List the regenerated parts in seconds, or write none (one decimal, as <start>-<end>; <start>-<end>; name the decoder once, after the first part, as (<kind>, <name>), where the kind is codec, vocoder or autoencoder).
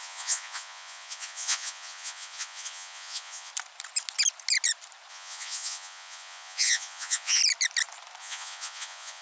0.0-3.5 (vocoder, Vocos); 5.1-7.4; 8.2-9.2